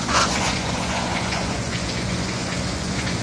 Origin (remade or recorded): remade